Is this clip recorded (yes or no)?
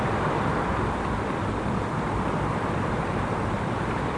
no